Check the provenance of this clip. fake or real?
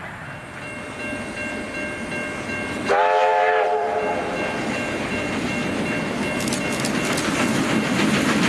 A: real